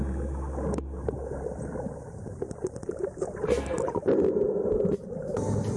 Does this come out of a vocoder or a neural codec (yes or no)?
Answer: no